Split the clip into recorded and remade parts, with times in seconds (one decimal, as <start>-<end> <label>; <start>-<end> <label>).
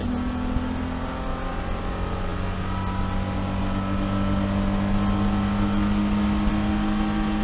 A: 0.0-7.4 recorded